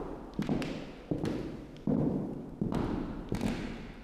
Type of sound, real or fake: fake